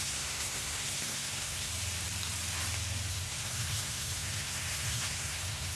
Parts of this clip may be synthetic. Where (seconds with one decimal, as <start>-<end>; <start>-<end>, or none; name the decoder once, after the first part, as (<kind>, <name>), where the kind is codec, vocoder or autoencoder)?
0.0-1.7 (codec, SNAC); 3.1-5.8